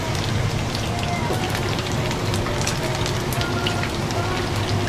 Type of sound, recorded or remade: recorded